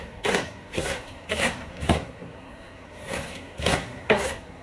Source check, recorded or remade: remade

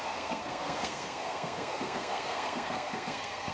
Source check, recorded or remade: remade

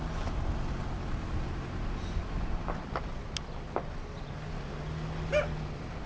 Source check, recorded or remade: recorded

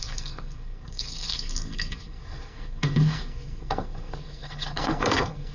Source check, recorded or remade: remade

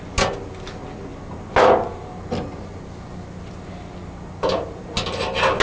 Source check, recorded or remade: recorded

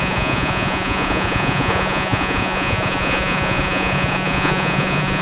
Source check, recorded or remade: remade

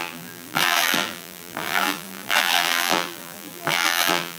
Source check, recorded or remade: remade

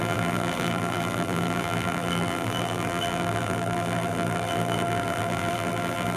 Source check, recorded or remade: remade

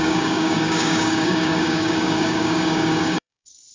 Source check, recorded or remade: remade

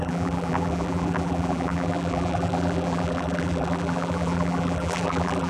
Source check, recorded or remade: remade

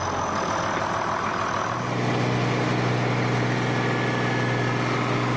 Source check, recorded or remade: recorded